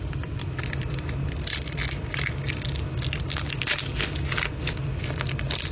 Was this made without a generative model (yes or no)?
yes